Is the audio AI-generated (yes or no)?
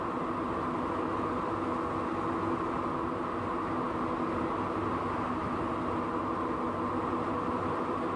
no